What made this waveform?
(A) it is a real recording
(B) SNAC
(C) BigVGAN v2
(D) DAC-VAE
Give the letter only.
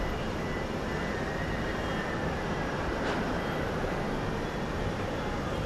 C